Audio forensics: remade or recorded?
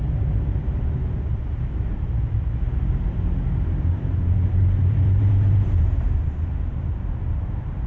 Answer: remade